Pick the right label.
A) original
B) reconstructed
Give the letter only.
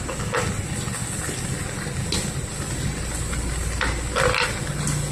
A